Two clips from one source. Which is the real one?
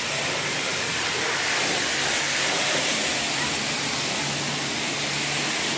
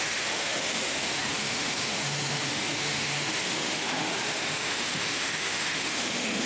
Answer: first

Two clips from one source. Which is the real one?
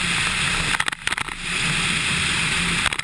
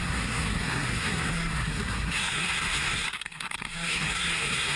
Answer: first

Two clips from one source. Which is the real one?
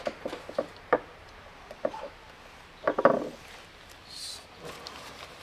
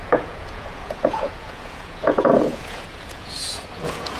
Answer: first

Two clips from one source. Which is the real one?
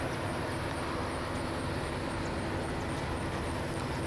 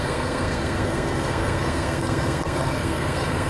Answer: first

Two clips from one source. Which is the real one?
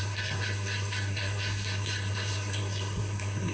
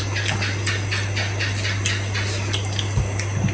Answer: second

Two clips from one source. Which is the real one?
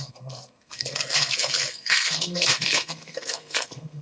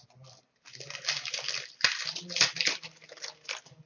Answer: second